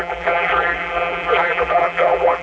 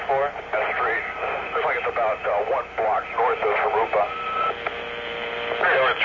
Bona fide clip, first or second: second